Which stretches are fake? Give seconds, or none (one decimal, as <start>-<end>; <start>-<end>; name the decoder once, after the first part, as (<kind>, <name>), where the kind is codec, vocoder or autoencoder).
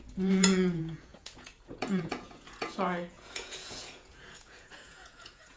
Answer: 0.0-5.6 (vocoder, Vocos)